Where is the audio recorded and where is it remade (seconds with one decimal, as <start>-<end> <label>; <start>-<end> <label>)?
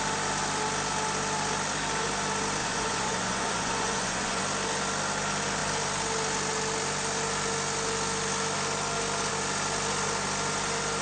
0.0-2.6 recorded; 2.6-4.4 remade; 4.4-11.0 recorded